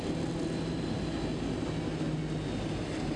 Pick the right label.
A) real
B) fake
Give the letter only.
A